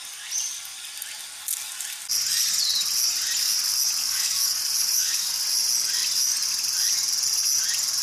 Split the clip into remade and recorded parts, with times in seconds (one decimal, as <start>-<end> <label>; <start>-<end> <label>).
0.0-4.0 recorded; 4.0-5.3 remade; 5.3-8.0 recorded